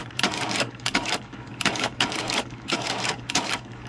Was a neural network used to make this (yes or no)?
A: yes